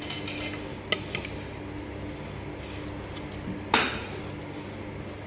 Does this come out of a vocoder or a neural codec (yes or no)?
no